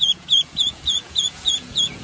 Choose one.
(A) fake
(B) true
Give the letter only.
A